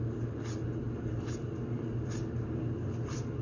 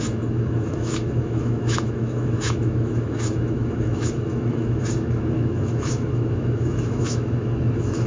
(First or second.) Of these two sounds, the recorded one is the first